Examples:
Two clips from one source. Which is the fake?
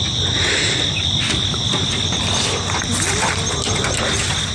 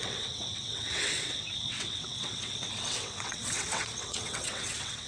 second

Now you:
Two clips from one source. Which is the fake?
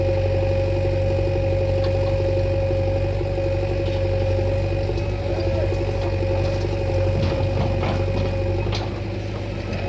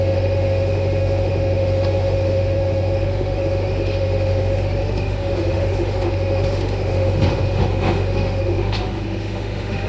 second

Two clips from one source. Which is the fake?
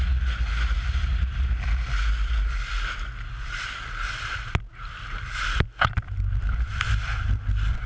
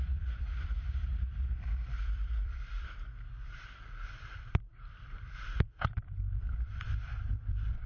second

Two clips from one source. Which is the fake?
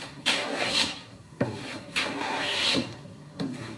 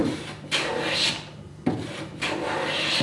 first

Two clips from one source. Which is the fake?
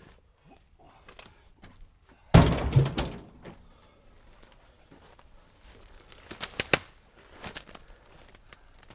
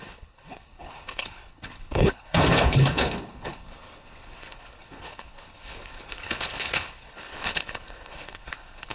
second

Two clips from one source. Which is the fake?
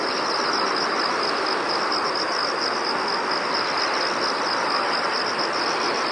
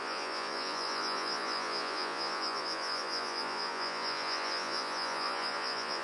second